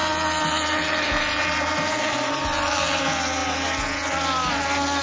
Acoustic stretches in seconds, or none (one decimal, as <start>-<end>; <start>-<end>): 3.0-5.0